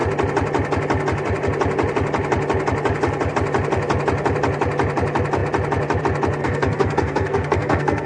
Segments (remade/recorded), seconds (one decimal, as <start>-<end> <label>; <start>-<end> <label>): 0.0-6.4 recorded; 6.4-8.1 remade